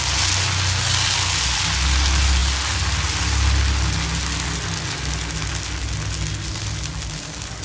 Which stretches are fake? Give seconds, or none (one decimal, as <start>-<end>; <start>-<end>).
none